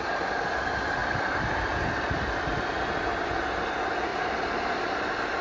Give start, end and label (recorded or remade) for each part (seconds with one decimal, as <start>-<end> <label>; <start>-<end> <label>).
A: 0.0-1.0 recorded; 1.0-3.1 remade; 3.1-4.1 recorded; 4.1-4.9 remade; 4.9-5.4 recorded